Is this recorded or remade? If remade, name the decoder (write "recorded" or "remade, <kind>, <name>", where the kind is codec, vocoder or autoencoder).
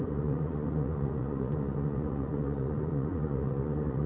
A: remade, vocoder, Vocos